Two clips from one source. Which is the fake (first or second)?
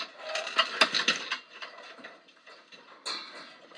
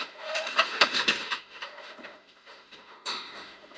second